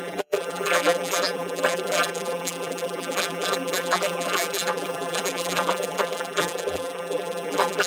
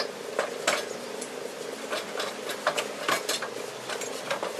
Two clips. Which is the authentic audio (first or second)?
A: second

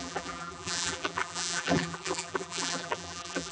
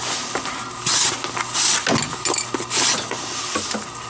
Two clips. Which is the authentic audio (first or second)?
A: second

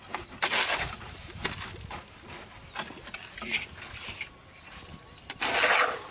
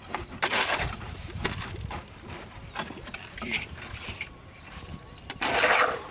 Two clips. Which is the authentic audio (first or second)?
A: first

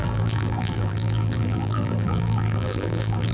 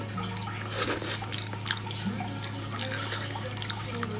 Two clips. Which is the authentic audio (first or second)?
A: second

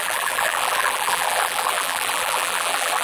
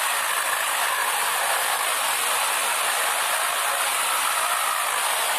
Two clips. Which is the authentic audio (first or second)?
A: second